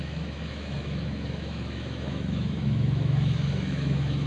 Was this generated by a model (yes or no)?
yes